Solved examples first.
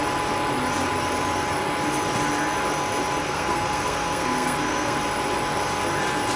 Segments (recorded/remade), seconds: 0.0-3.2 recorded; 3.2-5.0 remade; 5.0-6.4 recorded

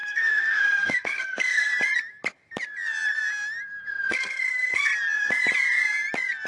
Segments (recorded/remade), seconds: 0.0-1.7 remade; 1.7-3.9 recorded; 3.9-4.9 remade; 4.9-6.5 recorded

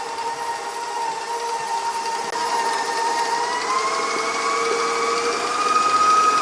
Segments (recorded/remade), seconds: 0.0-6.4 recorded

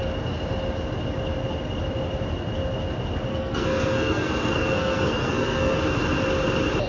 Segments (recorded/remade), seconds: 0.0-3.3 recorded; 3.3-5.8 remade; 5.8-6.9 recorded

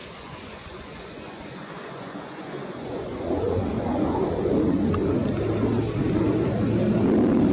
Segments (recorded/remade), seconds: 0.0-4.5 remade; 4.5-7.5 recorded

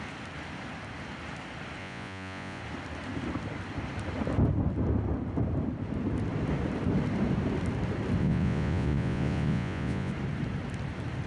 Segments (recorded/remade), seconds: 0.0-1.8 recorded; 1.8-2.6 remade; 2.6-8.2 recorded; 8.2-10.1 remade; 10.1-11.3 recorded